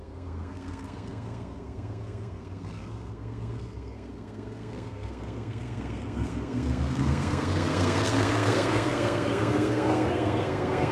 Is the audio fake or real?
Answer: fake